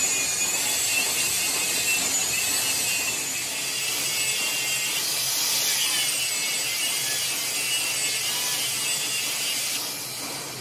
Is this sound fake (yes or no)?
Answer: no